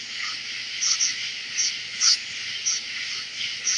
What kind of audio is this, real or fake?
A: real